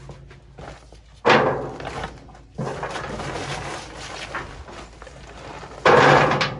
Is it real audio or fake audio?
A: real